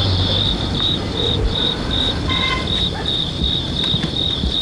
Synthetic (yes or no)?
yes